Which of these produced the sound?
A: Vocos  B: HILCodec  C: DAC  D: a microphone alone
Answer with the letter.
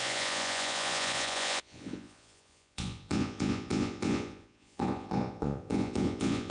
A